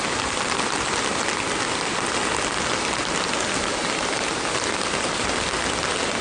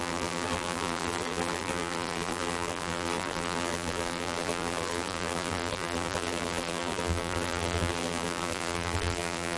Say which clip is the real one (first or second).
first